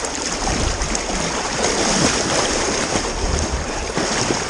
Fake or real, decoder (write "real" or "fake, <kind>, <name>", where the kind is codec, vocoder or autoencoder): fake, vocoder, BigVGAN v2